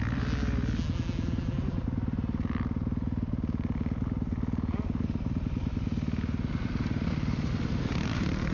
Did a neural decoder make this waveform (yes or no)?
no